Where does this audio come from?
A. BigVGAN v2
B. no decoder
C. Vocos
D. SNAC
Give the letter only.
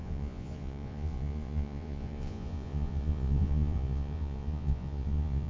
C